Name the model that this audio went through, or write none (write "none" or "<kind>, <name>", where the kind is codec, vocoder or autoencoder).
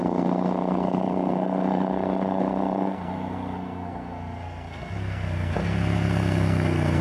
codec, SNAC